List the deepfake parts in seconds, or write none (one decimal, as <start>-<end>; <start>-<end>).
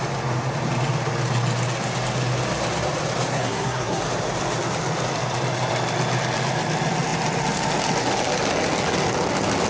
3.3-4.0